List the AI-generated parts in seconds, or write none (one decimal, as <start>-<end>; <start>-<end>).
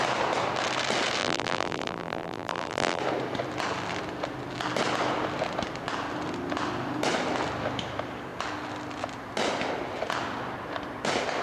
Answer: 1.2-3.0